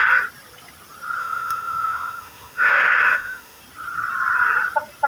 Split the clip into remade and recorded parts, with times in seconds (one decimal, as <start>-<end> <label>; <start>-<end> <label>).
0.0-1.2 recorded; 1.2-3.6 remade; 3.6-5.1 recorded